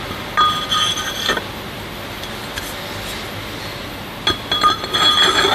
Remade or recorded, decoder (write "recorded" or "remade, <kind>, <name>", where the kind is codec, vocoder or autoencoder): recorded